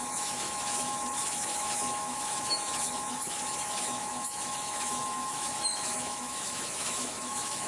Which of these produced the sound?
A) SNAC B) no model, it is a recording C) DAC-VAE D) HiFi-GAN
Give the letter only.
C